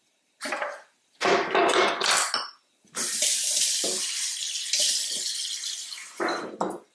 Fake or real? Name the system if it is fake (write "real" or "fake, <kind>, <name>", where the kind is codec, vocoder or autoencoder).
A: real